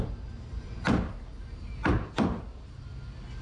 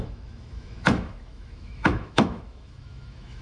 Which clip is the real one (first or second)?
first